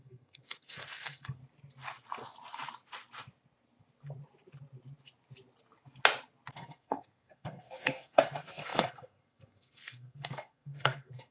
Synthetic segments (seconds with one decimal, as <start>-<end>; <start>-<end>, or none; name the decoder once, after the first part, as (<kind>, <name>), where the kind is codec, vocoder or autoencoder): 0.0-1.4 (codec, SNAC); 6.5-11.3